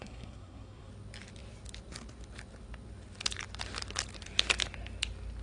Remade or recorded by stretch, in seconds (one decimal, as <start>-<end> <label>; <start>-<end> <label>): 0.0-0.9 remade; 0.9-5.4 recorded